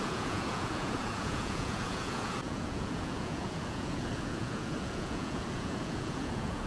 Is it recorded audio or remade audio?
remade